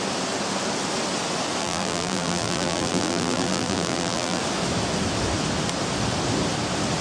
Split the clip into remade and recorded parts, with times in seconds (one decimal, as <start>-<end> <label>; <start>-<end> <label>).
0.0-1.6 recorded; 1.6-4.4 remade; 4.4-7.0 recorded